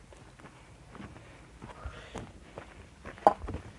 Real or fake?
real